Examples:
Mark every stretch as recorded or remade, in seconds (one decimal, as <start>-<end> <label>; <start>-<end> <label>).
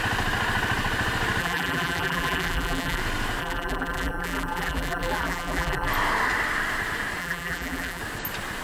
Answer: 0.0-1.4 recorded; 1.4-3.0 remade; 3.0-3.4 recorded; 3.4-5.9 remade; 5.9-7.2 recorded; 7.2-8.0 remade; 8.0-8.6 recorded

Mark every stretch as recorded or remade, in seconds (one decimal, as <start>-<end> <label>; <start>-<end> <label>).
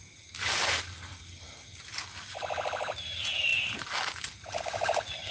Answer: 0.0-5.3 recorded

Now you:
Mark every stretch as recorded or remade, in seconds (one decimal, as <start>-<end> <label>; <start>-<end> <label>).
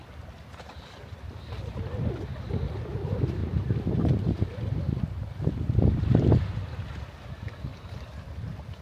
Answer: 0.0-3.4 recorded; 3.4-7.3 remade; 7.3-7.7 recorded; 7.7-8.8 remade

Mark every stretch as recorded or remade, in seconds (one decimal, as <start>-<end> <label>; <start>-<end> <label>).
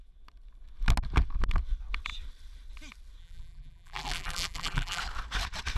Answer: 0.0-3.2 recorded; 3.2-5.0 remade; 5.0-5.8 recorded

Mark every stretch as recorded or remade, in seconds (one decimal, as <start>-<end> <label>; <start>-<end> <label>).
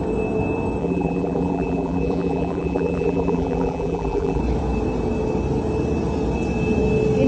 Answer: 0.0-0.8 recorded; 0.8-4.4 remade; 4.4-7.3 recorded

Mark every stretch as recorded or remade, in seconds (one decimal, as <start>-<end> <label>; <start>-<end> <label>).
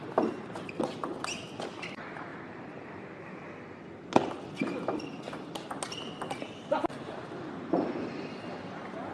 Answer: 0.0-9.1 recorded